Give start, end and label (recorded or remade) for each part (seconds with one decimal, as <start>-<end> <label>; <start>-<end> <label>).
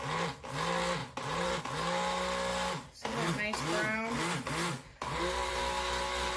0.0-1.0 recorded; 1.0-1.6 remade; 1.6-4.9 recorded; 4.9-5.6 remade; 5.6-6.4 recorded